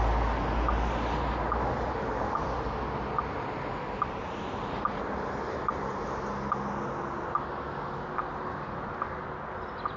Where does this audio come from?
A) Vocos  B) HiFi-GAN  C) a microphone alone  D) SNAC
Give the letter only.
C